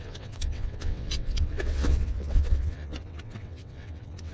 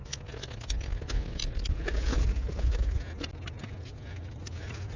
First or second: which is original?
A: second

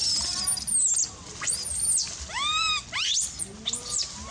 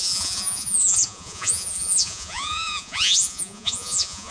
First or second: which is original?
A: first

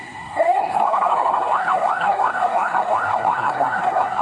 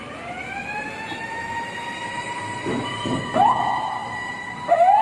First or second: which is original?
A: second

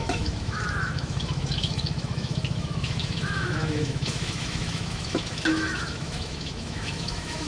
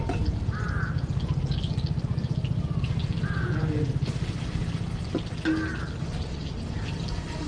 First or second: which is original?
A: second